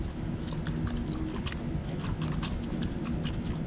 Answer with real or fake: real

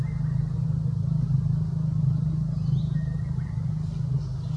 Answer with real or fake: real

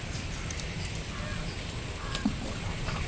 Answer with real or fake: real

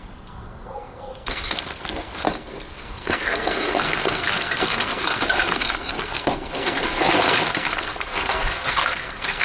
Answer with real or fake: fake